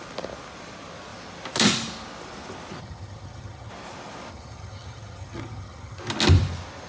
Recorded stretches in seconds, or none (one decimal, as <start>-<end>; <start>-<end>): 0.0-2.8; 3.7-4.3; 6.0-6.9